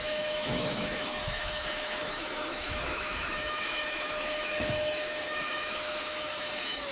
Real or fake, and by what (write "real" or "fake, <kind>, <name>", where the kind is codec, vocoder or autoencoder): fake, autoencoder, DAC-VAE